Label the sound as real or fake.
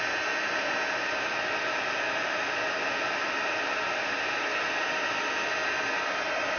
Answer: real